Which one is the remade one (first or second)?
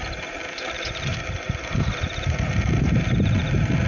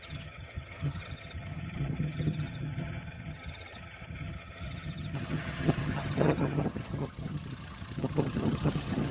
second